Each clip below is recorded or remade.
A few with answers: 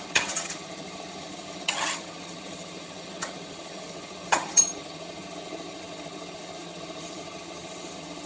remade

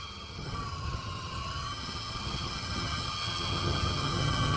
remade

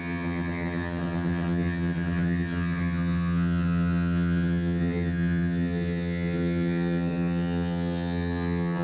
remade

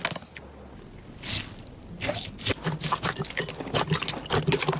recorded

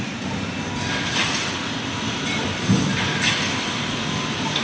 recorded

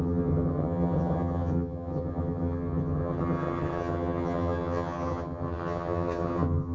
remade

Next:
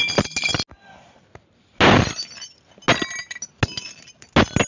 recorded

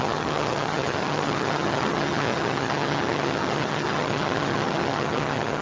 remade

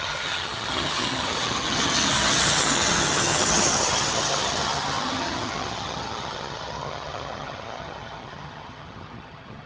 remade